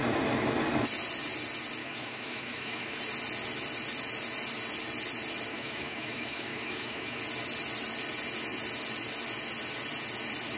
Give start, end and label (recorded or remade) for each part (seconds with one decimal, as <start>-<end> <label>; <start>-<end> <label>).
0.0-1.8 recorded; 1.8-3.0 remade; 3.0-5.5 recorded; 5.5-7.2 remade; 7.2-10.6 recorded